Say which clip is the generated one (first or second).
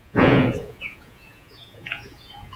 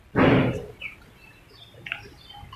first